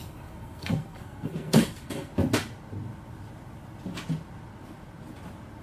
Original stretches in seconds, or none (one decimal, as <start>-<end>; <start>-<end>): 2.1-5.6